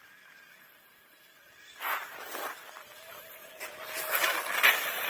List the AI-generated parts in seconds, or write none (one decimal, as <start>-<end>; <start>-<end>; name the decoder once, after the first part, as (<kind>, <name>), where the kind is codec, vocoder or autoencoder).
none